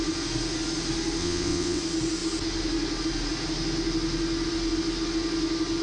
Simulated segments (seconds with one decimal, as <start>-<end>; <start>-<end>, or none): 1.2-1.8